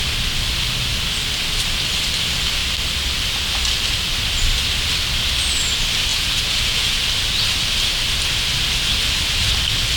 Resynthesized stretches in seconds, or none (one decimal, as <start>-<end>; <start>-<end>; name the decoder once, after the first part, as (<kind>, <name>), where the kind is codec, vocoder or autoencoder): 6.1-7.0 (vocoder, Vocos)